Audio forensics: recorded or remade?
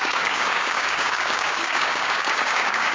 remade